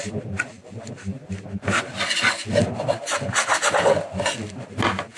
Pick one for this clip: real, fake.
real